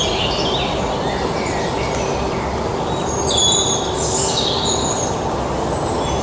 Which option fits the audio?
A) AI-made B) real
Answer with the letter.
B